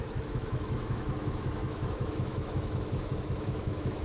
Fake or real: fake